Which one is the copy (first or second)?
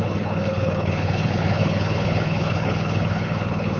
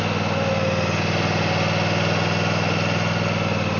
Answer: first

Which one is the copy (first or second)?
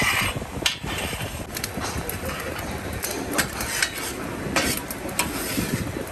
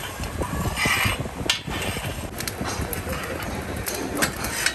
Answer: first